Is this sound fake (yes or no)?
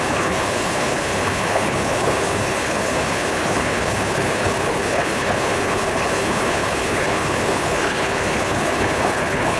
yes